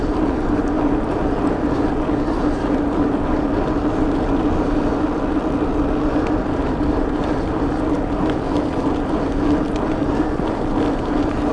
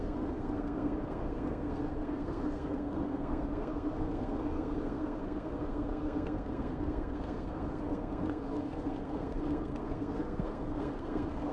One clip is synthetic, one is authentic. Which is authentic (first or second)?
first